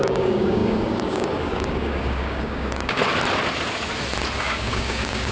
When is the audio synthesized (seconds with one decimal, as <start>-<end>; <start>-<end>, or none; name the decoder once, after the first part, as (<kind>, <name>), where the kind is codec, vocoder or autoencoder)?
0.0-3.0 (codec, DAC); 4.4-5.3